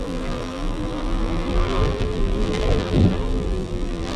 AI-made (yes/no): yes